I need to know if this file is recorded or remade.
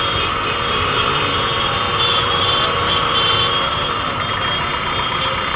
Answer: remade